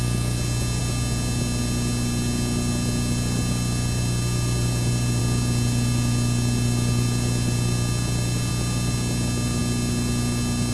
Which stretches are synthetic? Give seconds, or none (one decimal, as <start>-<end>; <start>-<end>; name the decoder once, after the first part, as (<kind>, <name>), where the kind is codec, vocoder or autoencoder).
none